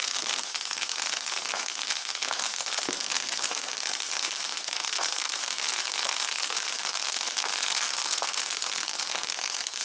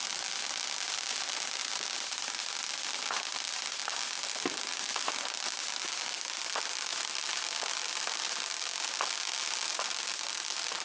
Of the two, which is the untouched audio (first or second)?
second